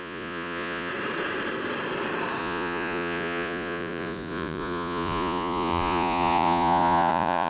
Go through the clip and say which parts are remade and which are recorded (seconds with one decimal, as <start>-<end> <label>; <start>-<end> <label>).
0.0-0.9 remade; 0.9-2.4 recorded; 2.4-7.5 remade